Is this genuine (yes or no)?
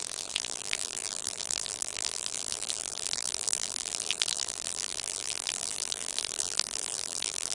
no